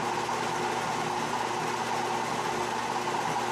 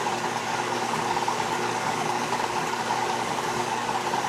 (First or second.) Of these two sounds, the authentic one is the first